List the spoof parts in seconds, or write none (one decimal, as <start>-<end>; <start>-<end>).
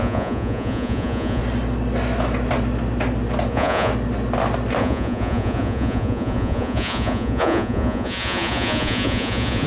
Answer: 0.0-1.4; 3.5-3.9; 4.8-9.7